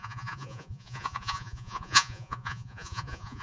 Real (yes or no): no